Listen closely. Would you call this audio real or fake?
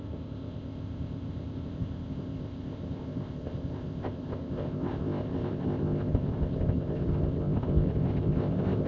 fake